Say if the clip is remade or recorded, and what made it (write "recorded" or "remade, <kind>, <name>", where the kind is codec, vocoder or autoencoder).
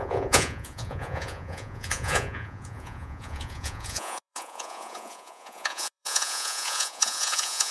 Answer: remade, vocoder, Vocos